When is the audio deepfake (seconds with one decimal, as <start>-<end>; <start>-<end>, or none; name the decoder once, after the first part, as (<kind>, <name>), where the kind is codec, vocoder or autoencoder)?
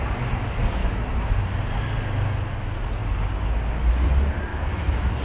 0.8-1.3 (autoencoder, DAC-VAE); 4.5-5.2